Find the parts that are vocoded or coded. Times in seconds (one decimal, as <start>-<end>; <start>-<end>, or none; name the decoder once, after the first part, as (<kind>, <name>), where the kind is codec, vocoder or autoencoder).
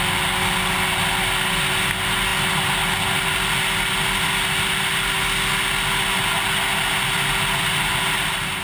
none